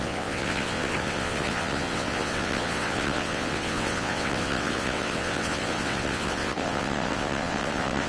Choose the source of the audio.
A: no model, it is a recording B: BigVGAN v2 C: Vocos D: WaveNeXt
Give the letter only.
D